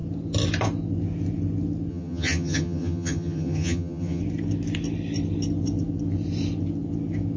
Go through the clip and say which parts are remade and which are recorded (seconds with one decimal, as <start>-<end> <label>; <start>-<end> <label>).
0.0-1.9 recorded; 1.9-4.2 remade; 4.2-7.4 recorded